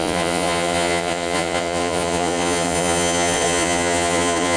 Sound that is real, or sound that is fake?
fake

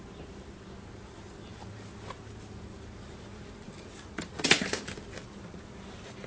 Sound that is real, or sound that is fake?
real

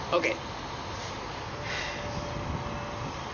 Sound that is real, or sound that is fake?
real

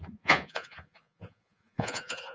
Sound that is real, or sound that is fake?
fake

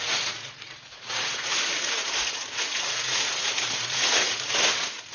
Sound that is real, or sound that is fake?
fake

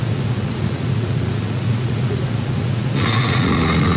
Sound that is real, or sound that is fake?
fake